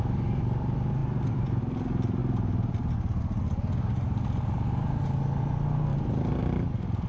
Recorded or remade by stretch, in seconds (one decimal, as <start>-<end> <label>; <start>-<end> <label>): 0.0-1.0 recorded; 1.0-1.6 remade; 1.6-5.9 recorded; 5.9-6.4 remade; 6.4-7.1 recorded